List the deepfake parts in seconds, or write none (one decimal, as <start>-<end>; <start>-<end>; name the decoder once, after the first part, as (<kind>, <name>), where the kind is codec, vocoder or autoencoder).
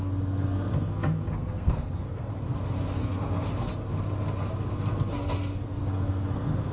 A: 0.0-2.3 (codec, SNAC); 3.0-3.7; 4.7-6.7